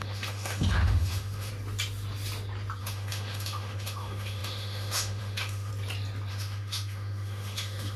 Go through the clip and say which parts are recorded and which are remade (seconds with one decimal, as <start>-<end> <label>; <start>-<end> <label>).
0.0-1.5 remade; 1.5-2.8 recorded; 2.8-5.7 remade; 5.7-6.3 recorded; 6.3-8.0 remade